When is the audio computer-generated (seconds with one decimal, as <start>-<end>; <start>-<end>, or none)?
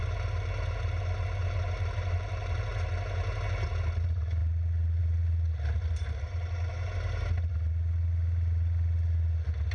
none